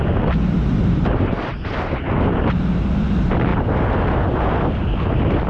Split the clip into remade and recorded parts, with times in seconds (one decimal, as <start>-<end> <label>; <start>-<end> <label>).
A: 0.0-0.7 recorded; 0.7-1.7 remade; 1.7-5.5 recorded